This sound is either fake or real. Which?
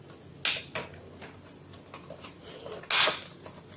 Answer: real